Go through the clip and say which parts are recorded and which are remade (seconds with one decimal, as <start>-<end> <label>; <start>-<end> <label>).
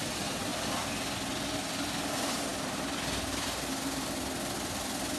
0.0-5.2 recorded